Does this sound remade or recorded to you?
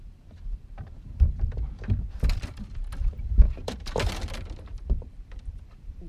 remade